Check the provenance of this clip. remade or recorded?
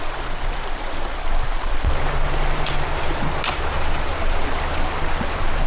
recorded